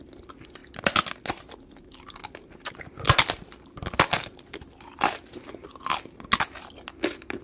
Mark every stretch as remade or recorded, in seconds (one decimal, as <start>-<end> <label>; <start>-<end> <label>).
0.0-7.4 recorded